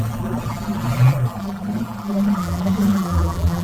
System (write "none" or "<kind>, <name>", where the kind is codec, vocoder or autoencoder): vocoder, BigVGAN v2